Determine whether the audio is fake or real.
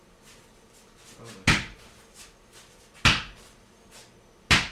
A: real